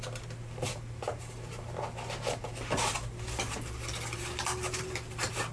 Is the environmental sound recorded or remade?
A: recorded